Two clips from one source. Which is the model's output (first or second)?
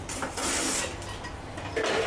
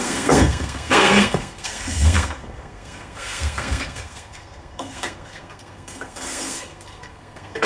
second